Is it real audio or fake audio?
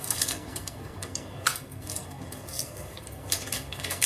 fake